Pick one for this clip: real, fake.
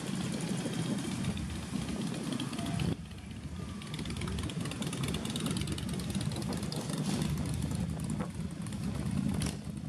real